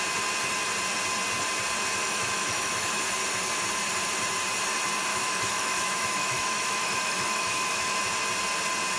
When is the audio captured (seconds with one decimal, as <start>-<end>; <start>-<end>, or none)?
0.0-2.0; 3.0-5.1; 8.0-9.0